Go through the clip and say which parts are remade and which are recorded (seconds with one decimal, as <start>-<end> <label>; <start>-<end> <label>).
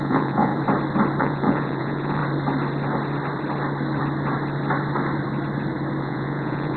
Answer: 0.0-0.5 remade; 0.5-1.2 recorded; 1.2-2.2 remade; 2.2-6.0 recorded; 6.0-6.8 remade